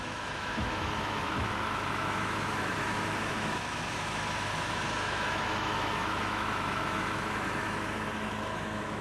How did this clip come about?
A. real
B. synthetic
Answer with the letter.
B